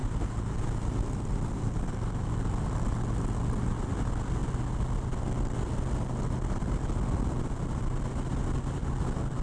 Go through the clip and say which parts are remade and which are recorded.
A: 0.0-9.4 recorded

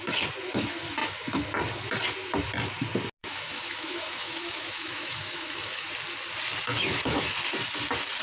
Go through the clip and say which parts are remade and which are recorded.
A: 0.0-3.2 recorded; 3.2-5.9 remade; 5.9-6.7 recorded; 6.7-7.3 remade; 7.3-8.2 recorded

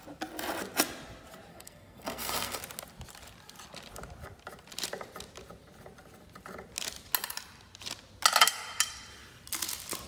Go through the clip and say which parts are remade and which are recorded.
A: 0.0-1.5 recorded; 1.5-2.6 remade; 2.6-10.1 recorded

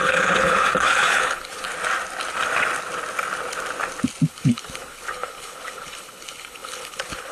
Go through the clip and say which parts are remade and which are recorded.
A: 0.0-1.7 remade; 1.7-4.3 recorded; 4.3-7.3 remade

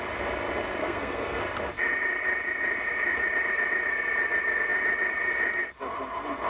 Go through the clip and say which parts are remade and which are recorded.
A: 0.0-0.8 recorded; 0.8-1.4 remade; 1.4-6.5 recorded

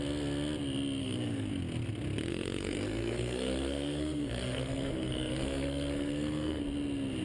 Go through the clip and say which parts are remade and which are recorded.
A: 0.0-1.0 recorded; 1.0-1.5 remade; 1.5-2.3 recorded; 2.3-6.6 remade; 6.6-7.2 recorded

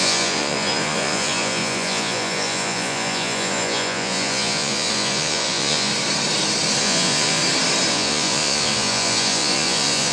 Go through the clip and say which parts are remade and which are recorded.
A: 0.0-5.9 remade; 5.9-6.8 recorded; 6.8-7.4 remade; 7.4-7.9 recorded; 7.9-10.1 remade

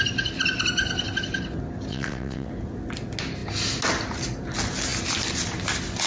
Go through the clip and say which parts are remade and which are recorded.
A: 0.0-1.9 recorded; 1.9-2.5 remade; 2.5-6.1 recorded